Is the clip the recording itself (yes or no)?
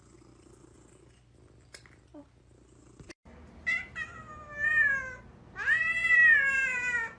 yes